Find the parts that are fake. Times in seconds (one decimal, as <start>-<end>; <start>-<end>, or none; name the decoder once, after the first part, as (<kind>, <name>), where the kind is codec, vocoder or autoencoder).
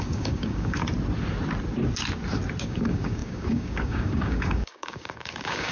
0.0-0.8 (codec, DAC); 2.6-5.7